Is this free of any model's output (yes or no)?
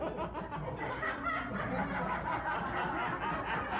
yes